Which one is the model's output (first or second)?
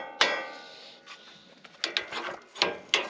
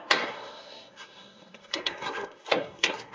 second